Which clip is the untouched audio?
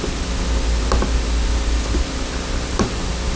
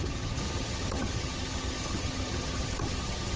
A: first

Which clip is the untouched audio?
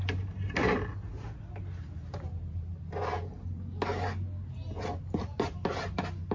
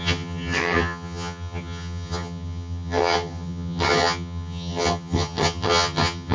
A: first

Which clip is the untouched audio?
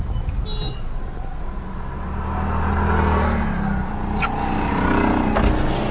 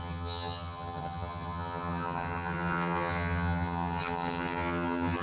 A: first